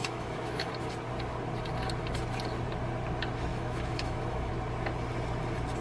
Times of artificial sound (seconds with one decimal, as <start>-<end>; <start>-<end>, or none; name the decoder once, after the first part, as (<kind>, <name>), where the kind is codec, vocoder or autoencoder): 0.0-0.7 (autoencoder, DAC-VAE); 3.5-4.5